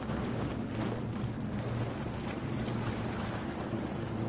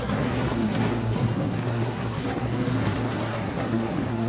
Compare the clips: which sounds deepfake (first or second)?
second